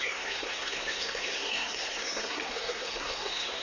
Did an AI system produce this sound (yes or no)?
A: yes